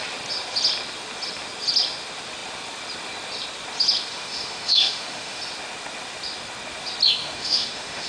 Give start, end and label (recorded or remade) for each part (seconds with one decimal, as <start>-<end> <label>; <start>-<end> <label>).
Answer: 0.0-4.1 recorded; 4.1-5.4 remade; 5.4-7.2 recorded; 7.2-8.1 remade